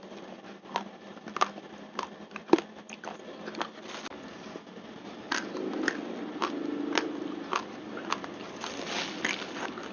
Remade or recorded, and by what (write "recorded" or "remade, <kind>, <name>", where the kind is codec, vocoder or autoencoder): recorded